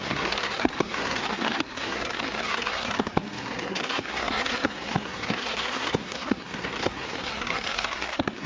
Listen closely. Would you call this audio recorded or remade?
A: remade